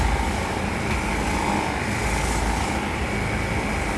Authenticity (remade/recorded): recorded